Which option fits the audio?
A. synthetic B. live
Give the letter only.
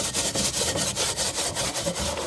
B